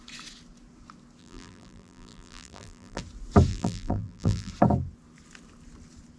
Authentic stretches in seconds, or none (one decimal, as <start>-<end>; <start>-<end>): 0.0-1.2; 3.0-3.5; 4.5-6.2